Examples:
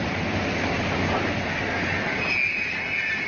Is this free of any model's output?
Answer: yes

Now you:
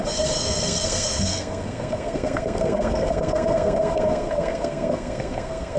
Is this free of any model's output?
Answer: no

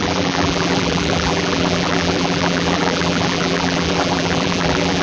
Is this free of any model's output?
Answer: no